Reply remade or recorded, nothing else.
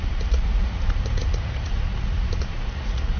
remade